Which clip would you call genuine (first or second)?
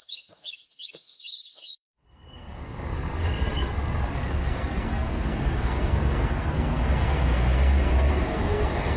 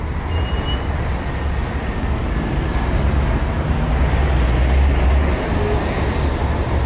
second